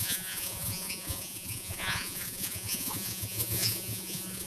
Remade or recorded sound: remade